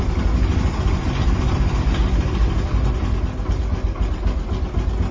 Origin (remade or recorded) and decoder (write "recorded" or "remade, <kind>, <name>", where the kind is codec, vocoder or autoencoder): recorded